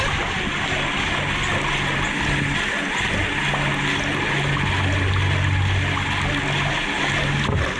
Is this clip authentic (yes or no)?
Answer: yes